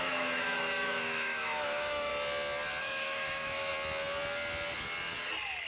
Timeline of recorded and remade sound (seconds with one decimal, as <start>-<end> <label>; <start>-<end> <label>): 0.0-2.1 remade; 2.1-2.8 recorded; 2.8-3.7 remade; 3.7-5.7 recorded